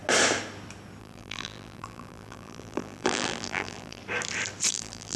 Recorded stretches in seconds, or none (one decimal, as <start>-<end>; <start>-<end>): 0.0-1.0; 4.0-4.7